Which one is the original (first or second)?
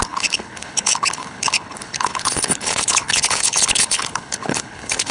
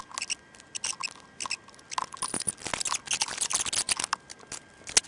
second